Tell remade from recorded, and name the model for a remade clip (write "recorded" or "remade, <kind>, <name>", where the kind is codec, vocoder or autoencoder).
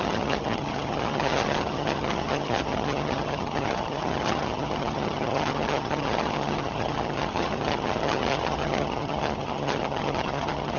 remade, vocoder, HiFi-GAN